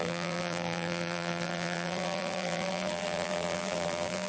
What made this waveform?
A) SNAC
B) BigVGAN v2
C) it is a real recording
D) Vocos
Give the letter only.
B